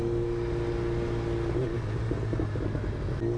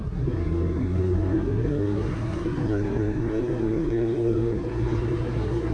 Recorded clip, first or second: first